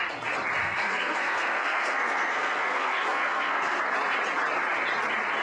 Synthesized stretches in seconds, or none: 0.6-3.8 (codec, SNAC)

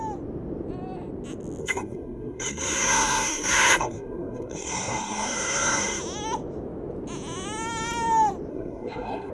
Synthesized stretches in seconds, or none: 1.6-6.0 (codec, SNAC); 8.5-9.3

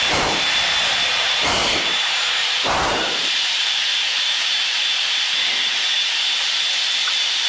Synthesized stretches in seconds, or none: 0.0-7.5 (vocoder, BigVGAN v2)

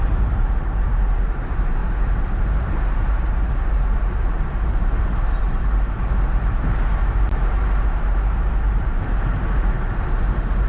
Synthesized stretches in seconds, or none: 0.0-10.7 (vocoder, BigVGAN v2)

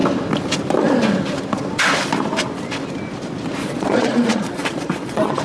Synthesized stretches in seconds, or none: 3.6-5.4 (vocoder, Vocos)

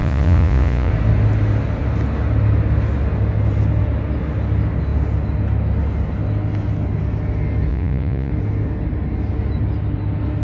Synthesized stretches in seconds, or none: 0.0-0.9 (vocoder, Vocos); 7.7-8.3

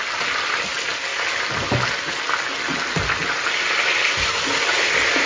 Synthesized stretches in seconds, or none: none